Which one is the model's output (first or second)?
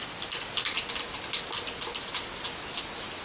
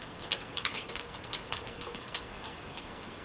second